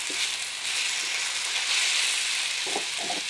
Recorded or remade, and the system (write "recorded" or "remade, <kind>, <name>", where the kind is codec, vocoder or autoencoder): recorded